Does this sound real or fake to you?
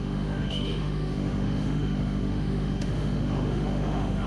fake